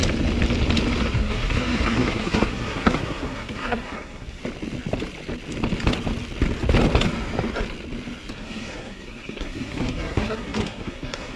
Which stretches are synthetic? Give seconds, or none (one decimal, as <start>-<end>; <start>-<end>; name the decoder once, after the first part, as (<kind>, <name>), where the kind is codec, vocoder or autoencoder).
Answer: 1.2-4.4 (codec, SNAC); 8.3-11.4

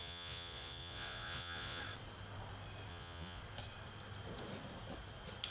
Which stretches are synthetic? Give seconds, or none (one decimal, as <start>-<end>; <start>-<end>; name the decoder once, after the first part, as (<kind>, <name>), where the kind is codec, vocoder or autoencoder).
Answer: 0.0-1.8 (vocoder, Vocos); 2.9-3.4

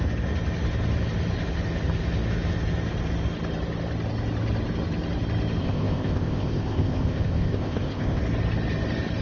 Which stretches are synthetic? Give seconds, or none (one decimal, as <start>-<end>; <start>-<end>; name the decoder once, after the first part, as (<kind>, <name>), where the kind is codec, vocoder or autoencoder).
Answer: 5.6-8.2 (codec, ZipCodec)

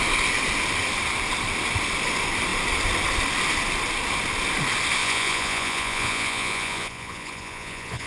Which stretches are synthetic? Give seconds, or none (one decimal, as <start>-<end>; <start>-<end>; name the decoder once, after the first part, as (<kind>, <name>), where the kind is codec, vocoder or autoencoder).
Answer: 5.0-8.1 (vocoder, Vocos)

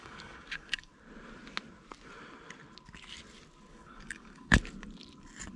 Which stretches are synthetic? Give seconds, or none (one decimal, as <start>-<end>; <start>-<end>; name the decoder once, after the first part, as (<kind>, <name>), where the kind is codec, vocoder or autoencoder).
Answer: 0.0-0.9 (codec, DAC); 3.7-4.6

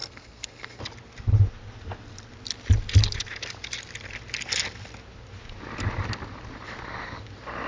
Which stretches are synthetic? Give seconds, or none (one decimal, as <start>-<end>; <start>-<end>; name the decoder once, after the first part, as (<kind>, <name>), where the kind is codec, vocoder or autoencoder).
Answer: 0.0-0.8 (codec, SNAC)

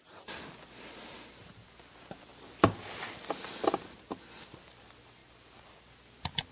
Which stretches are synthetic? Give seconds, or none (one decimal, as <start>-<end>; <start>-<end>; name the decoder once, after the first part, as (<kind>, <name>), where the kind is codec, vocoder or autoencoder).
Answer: none